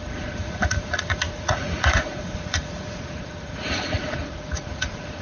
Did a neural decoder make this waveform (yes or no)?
yes